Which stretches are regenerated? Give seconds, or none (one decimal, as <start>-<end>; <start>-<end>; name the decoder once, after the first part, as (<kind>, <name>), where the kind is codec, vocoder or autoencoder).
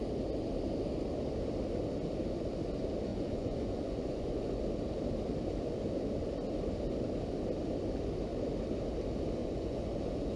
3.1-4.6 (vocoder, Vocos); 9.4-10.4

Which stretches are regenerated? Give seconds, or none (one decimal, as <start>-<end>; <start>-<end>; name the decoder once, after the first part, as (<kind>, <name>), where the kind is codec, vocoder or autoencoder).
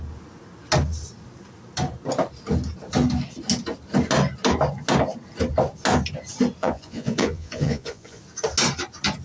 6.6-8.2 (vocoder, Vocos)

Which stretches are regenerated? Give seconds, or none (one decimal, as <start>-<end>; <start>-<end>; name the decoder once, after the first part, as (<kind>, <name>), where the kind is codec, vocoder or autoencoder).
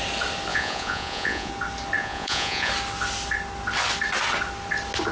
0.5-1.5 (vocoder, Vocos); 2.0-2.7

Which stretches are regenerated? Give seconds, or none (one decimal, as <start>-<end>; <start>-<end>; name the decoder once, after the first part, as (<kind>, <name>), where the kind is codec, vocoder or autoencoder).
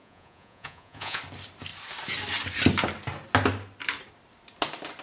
0.0-1.2 (vocoder, Vocos)